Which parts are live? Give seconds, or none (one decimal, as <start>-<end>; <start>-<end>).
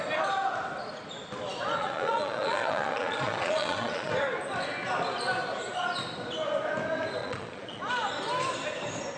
0.0-1.8; 4.1-7.2; 7.8-9.2